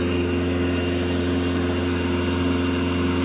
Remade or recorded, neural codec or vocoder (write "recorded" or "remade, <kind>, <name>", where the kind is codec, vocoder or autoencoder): recorded